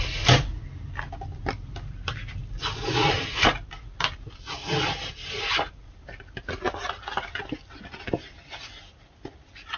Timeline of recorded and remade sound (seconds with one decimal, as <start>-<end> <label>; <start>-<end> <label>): 0.0-9.8 recorded